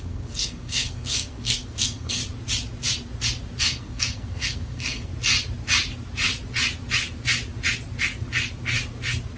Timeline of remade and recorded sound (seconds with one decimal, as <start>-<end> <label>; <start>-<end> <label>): 0.0-2.2 remade; 2.2-3.6 recorded; 3.6-5.1 remade; 5.1-9.4 recorded